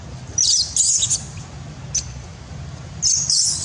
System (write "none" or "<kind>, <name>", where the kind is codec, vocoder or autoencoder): none